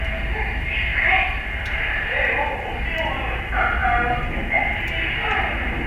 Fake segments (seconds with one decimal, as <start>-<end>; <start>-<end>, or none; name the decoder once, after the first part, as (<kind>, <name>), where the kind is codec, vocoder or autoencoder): none